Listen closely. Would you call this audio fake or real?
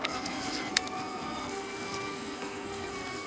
fake